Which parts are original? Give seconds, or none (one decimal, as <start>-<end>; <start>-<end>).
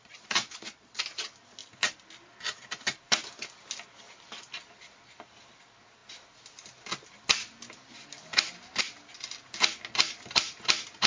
1.0-11.1